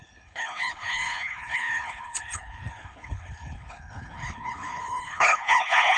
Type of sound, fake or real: fake